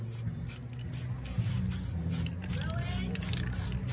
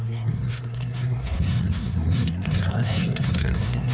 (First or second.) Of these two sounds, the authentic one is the first